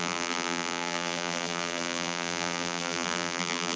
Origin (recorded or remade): remade